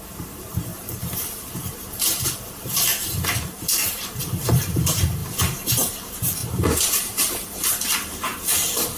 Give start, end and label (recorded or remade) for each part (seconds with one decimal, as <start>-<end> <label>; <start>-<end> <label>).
0.0-5.2 remade; 5.2-5.7 recorded; 5.7-9.0 remade